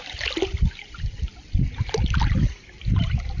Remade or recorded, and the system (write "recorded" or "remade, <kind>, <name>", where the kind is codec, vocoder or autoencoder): recorded